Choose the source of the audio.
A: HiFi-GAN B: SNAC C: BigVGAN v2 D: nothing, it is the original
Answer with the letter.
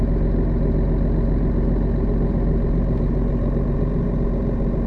D